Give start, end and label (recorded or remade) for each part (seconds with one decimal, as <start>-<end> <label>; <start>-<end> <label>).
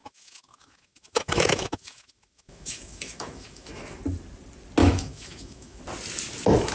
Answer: 0.0-4.0 remade; 4.0-4.8 recorded; 4.8-5.8 remade; 5.8-6.7 recorded